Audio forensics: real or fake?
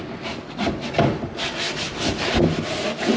real